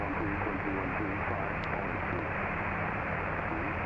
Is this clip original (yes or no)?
yes